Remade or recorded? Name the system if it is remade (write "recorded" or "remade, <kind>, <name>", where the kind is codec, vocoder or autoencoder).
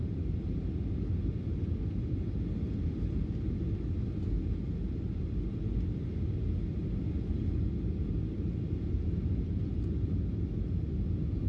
recorded